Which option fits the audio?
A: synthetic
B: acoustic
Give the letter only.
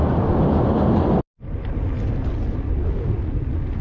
B